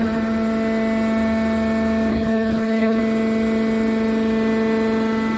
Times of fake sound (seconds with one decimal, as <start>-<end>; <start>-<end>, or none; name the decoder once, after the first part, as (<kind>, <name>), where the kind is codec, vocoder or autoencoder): 2.1-3.0 (codec, HILCodec)